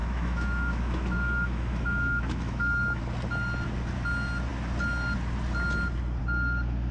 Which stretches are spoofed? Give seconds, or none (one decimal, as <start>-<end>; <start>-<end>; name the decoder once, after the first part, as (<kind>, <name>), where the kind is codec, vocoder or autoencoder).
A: 0.0-3.0 (autoencoder, DAC-VAE)